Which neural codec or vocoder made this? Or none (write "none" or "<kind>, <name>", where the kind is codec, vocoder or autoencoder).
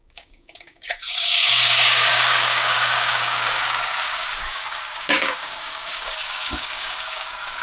codec, DAC